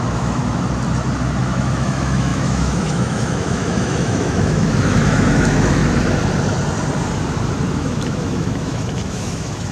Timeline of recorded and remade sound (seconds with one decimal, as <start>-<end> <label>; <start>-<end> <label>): 0.0-0.4 remade; 0.4-1.4 recorded; 1.4-5.8 remade; 5.8-7.7 recorded; 7.7-9.7 remade